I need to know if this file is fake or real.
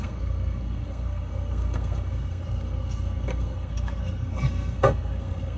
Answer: fake